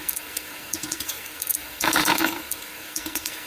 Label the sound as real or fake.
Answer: fake